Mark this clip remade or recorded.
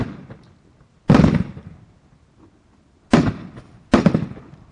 recorded